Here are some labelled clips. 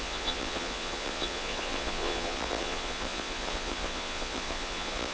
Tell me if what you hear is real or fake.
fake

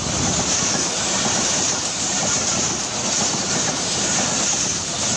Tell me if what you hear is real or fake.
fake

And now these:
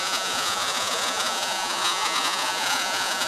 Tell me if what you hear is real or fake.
fake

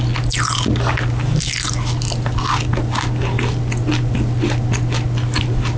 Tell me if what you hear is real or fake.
real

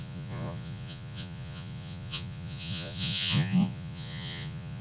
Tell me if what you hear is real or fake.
fake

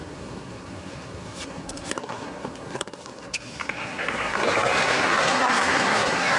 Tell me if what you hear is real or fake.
fake